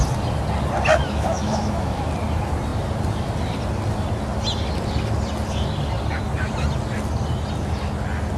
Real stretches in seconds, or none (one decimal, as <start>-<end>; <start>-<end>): 0.0-0.9; 2.0-8.4